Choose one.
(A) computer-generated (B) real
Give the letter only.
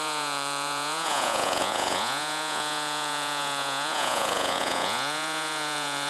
A